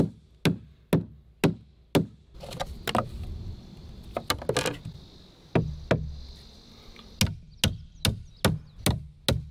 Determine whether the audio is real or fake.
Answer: real